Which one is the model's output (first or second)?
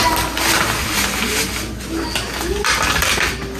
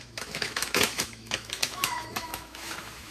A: second